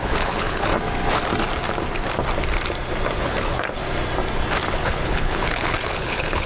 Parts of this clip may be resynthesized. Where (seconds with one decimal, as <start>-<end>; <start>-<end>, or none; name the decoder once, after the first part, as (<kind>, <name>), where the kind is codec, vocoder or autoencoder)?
0.0-0.7 (codec, HILCodec); 3.2-3.8; 4.8-6.5